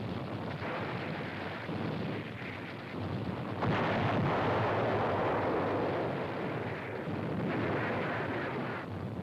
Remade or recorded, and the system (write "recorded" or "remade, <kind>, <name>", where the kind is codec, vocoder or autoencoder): recorded